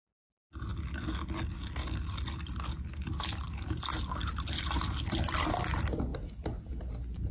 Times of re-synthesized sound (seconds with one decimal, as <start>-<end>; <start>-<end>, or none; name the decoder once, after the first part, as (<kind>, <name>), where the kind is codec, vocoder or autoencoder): none